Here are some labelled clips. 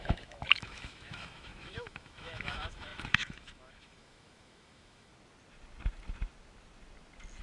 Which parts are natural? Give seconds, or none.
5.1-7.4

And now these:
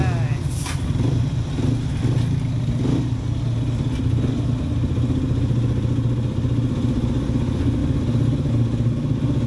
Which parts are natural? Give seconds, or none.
0.0-9.5

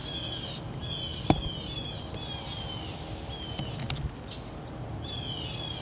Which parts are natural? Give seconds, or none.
0.0-5.8